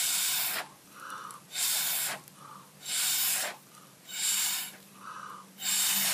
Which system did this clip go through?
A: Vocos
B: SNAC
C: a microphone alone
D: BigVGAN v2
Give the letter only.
D